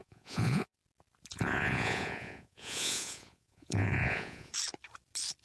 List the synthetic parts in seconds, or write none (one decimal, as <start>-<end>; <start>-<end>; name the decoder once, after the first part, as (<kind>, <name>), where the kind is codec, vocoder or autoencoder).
0.0-0.8 (vocoder, Vocos); 1.3-4.5